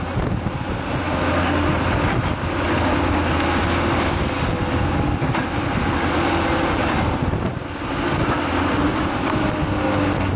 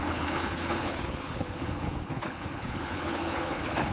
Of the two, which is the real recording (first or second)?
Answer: first